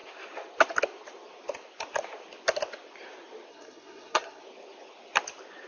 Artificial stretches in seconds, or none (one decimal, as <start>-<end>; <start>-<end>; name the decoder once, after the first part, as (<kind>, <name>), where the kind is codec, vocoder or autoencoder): 3.5-4.4 (codec, SNAC)